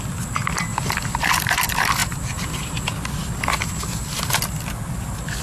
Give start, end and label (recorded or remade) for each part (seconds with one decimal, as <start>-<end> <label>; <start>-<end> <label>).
0.0-0.7 recorded; 0.7-1.3 remade; 1.3-2.0 recorded; 2.0-3.8 remade; 3.8-5.4 recorded